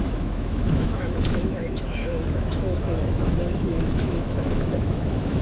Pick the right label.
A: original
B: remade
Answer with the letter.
B